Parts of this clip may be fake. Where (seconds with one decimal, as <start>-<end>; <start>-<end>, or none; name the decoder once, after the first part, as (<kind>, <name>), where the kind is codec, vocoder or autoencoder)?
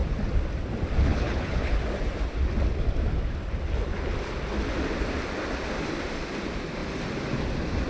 1.1-1.8 (codec, HILCodec)